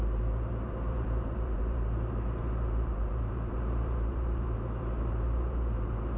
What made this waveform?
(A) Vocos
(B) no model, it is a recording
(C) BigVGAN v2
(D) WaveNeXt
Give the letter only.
C